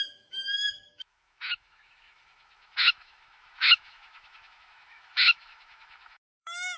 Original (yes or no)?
no